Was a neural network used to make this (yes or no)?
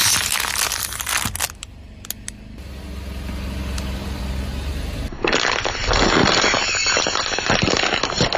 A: no